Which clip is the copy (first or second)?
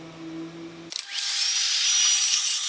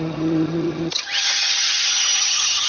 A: second